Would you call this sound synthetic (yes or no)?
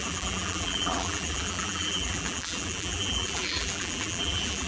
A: yes